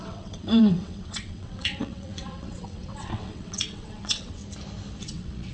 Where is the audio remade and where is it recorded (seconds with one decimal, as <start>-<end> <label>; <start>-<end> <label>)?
0.0-4.4 remade; 4.4-5.0 recorded; 5.0-5.5 remade